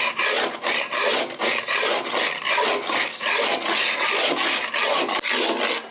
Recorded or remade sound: recorded